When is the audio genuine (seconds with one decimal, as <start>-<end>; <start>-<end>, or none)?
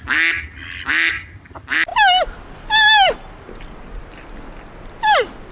0.0-5.5